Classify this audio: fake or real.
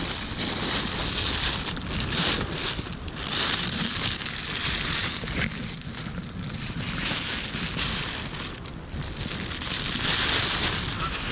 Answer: real